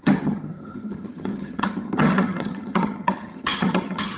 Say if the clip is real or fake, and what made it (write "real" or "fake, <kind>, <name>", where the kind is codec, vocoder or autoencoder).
fake, vocoder, HiFi-GAN